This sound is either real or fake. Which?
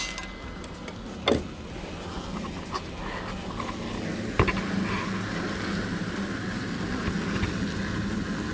real